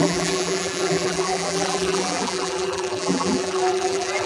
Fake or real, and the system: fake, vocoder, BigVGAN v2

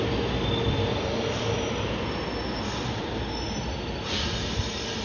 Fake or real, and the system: real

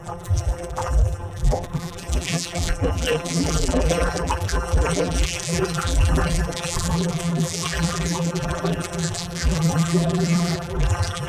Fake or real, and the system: fake, vocoder, BigVGAN v2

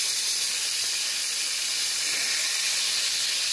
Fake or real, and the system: real